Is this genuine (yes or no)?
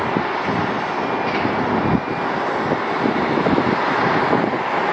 yes